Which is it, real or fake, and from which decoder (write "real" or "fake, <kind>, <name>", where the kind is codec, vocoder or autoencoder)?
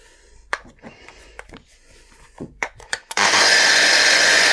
fake, vocoder, Vocos